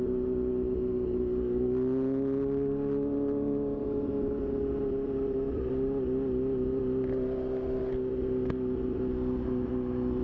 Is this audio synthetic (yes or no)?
no